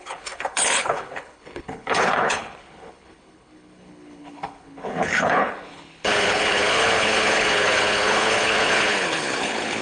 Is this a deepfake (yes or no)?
yes